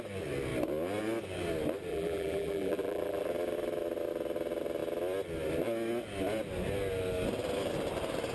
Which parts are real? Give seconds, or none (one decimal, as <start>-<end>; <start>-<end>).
0.0-1.9; 3.3-8.3